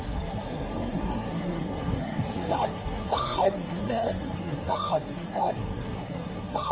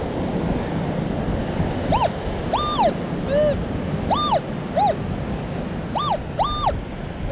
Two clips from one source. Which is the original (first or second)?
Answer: second